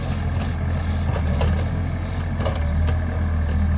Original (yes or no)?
yes